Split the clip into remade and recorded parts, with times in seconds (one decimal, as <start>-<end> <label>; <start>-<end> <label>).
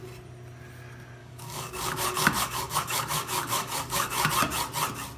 0.0-1.2 recorded; 1.2-4.3 remade; 4.3-5.2 recorded